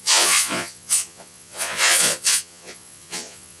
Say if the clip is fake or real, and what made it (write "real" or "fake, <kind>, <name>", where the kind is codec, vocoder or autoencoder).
fake, vocoder, Vocos